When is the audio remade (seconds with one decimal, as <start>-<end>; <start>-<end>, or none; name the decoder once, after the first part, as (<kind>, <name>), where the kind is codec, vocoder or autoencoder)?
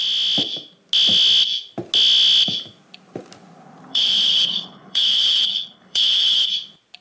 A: 3.9-6.5 (codec, HILCodec)